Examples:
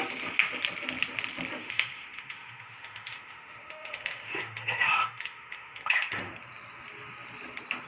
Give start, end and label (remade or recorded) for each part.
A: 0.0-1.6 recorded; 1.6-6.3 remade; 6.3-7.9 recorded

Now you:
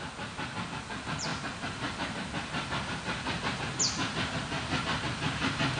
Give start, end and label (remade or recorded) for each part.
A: 0.0-5.8 recorded

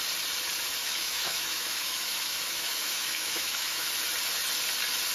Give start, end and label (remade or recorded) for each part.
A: 0.0-0.8 recorded; 0.8-3.9 remade; 3.9-5.1 recorded

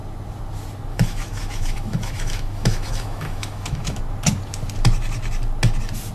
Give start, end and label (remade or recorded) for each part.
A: 0.0-0.9 recorded; 0.9-4.0 remade; 4.0-6.1 recorded